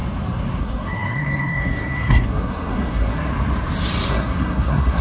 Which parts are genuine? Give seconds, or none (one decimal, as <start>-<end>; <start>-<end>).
0.0-0.6; 3.3-4.1